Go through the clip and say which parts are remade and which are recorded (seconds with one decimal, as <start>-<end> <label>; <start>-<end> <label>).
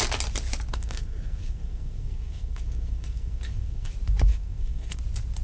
0.0-0.7 recorded; 0.7-3.9 remade; 3.9-4.3 recorded; 4.3-5.0 remade; 5.0-5.4 recorded